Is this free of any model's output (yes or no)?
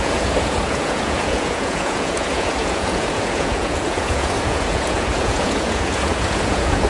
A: no